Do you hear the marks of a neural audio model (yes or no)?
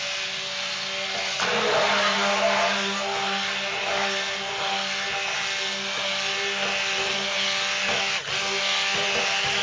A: no